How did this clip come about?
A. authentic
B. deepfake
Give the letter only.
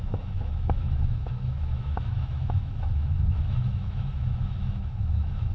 B